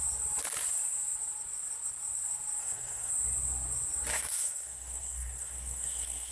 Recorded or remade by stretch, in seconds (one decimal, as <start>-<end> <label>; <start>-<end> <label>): 0.0-2.6 recorded; 2.6-3.1 remade; 3.1-4.1 recorded; 4.1-6.3 remade